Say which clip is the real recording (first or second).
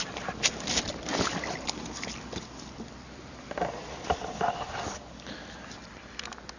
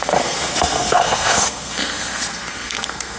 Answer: first